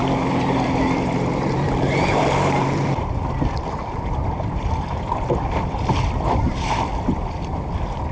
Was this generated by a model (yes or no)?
yes